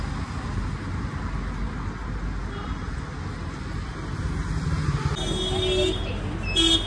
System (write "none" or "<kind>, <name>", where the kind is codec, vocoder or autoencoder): none